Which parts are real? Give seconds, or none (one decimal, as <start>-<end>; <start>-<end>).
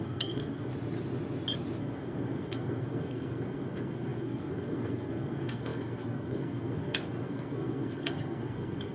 0.7-1.8